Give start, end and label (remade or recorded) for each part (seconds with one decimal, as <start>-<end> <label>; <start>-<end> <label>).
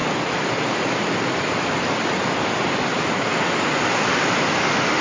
0.0-5.0 remade